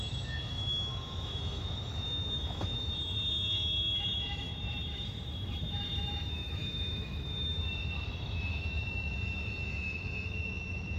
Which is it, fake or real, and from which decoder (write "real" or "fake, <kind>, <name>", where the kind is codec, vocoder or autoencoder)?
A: fake, autoencoder, DAC-VAE